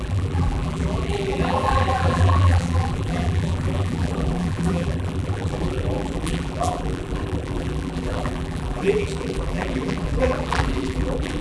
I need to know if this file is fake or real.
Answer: fake